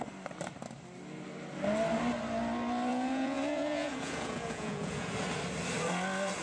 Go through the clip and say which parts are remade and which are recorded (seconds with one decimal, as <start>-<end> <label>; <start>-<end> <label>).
0.0-2.9 recorded; 2.9-5.1 remade; 5.1-6.4 recorded

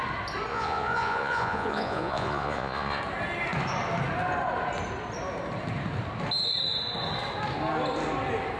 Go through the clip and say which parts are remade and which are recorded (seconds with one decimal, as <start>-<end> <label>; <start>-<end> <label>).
0.0-0.5 recorded; 0.5-3.0 remade; 3.0-8.6 recorded

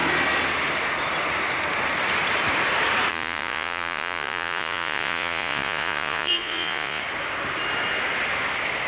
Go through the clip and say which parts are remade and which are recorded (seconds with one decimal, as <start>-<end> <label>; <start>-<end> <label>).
0.0-3.1 recorded; 3.1-7.0 remade; 7.0-8.9 recorded

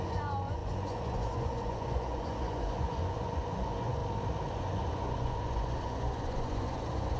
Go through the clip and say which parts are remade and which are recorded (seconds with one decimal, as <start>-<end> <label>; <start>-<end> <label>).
0.0-4.0 remade; 4.0-4.5 recorded; 4.5-7.2 remade

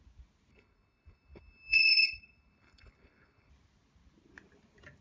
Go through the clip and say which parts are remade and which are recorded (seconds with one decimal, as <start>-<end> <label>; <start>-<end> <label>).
0.0-0.5 recorded; 0.5-3.5 remade; 3.5-5.0 recorded